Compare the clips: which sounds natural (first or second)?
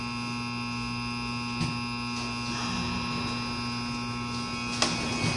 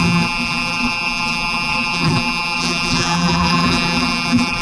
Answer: first